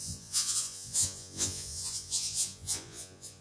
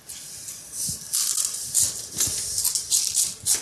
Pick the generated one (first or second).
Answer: first